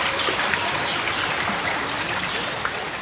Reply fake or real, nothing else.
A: real